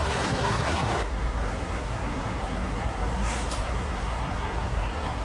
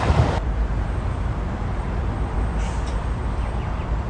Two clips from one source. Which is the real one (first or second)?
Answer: second